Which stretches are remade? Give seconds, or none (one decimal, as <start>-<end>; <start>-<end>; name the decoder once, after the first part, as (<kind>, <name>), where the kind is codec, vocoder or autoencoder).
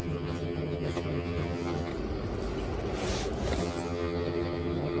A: 0.0-1.9 (vocoder, HiFi-GAN); 3.6-5.0